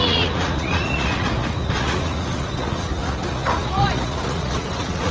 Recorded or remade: remade